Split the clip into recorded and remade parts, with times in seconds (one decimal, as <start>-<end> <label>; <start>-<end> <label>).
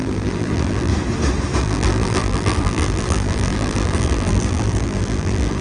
0.0-0.9 remade; 0.9-1.6 recorded; 1.6-5.6 remade